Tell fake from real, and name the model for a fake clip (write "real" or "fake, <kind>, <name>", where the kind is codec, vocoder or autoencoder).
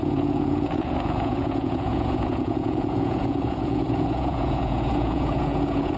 fake, vocoder, Vocos